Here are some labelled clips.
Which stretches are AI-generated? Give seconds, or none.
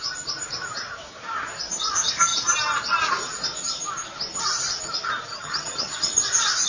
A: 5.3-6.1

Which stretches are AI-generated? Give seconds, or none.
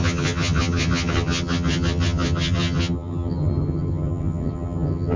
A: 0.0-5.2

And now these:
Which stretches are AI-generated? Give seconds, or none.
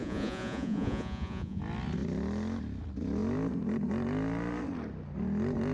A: 0.0-1.6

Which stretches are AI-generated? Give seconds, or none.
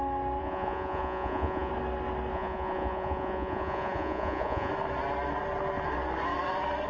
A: 0.4-1.7; 2.3-4.7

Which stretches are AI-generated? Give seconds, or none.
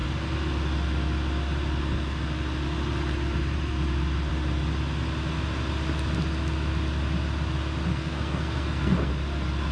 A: 7.9-9.1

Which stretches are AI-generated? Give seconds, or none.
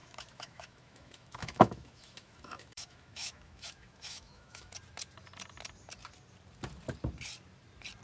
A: 0.0-4.7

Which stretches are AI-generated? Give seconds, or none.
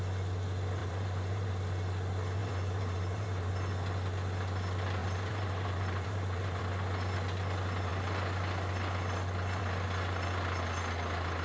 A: 0.8-1.5; 2.4-3.5; 5.0-6.6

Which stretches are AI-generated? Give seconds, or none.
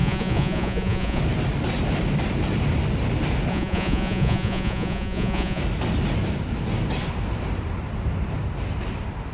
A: 0.0-1.2; 3.5-5.6